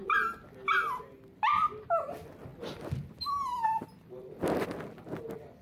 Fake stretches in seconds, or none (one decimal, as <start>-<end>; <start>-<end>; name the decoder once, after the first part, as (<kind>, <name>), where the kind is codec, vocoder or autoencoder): none